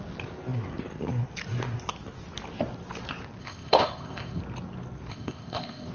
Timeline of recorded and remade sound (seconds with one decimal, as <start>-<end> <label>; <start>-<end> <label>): 0.0-3.4 recorded; 3.4-4.4 remade; 4.4-5.1 recorded; 5.1-5.9 remade